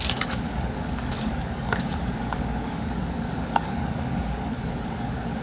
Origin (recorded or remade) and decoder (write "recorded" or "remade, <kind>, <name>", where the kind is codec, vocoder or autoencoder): remade, codec, DAC